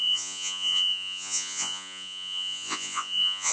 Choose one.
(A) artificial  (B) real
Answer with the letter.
A